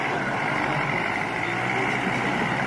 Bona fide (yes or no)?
yes